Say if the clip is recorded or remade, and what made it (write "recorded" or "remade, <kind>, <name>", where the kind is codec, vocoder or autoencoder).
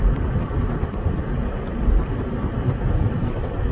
recorded